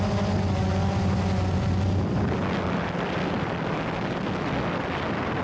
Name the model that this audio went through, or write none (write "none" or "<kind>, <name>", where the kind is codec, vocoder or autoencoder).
none